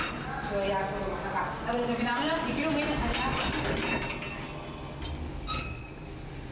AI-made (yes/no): no